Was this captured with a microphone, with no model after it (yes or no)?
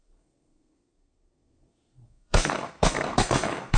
no